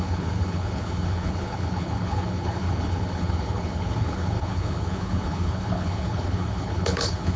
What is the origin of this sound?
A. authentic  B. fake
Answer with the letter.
B